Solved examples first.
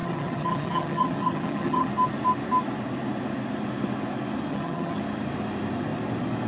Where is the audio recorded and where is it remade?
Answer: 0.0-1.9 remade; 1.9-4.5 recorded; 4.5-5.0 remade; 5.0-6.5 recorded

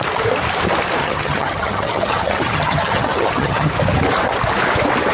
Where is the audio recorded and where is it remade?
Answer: 0.0-1.0 recorded; 1.0-3.7 remade; 3.7-5.1 recorded

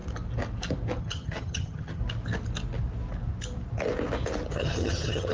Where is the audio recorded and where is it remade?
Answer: 0.0-1.0 recorded; 1.0-2.0 remade; 2.0-4.5 recorded; 4.5-5.3 remade

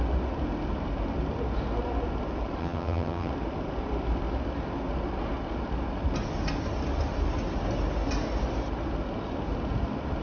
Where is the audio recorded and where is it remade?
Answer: 0.0-2.6 recorded; 2.6-3.3 remade; 3.3-10.2 recorded